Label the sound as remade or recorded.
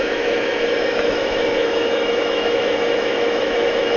remade